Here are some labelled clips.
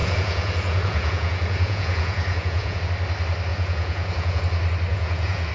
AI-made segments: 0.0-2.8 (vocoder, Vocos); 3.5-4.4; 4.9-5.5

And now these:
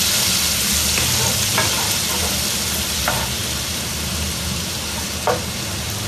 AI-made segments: none

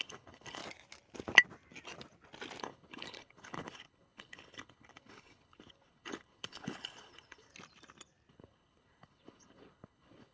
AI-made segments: 0.0-0.6 (codec, HILCodec); 2.6-7.5; 8.3-10.3

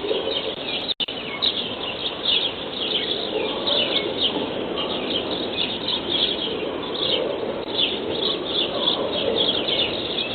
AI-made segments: none